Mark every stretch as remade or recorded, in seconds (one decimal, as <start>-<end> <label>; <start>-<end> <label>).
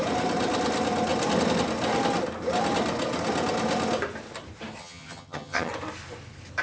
0.0-4.8 recorded; 4.8-5.7 remade; 5.7-6.6 recorded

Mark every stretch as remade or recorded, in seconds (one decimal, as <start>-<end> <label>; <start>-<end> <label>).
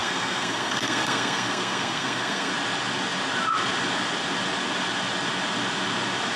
0.0-2.5 remade; 2.5-6.4 recorded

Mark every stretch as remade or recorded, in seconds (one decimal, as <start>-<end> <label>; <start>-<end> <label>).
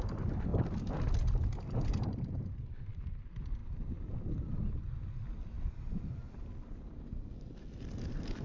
0.0-8.4 recorded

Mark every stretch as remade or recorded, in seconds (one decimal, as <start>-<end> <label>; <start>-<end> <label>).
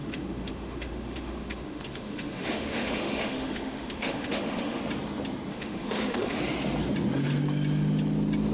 0.0-4.8 remade; 4.8-5.5 recorded; 5.5-6.4 remade; 6.4-8.5 recorded